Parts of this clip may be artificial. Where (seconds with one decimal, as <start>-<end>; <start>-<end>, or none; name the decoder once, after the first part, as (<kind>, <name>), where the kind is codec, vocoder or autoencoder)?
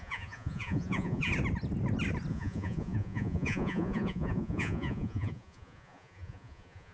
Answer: 0.0-1.3 (vocoder, Vocos); 2.3-6.9